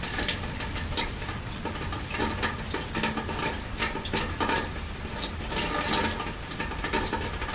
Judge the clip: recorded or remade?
recorded